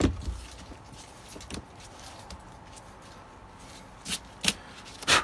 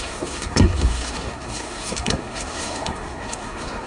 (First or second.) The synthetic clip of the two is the second